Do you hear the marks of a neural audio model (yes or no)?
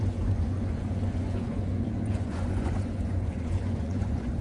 yes